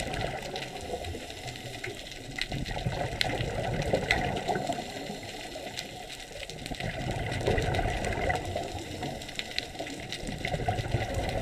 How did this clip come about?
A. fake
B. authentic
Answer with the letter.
B